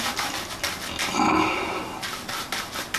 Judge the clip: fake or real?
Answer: real